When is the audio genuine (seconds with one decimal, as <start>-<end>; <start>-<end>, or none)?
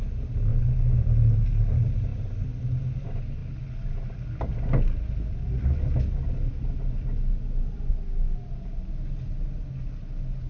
0.0-0.5; 1.0-10.5